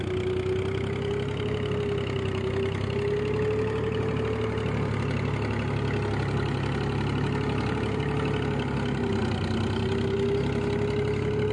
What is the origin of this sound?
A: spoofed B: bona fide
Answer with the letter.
B